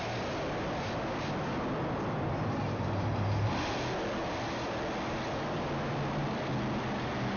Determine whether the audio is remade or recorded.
recorded